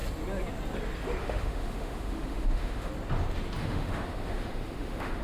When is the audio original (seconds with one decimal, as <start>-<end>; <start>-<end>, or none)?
0.0-1.2; 2.9-3.6